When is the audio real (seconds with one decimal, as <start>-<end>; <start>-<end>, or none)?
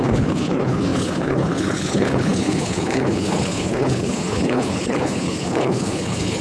none